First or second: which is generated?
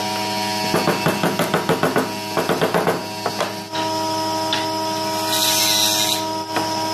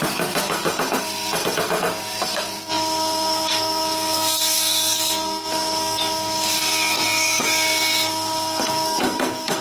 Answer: second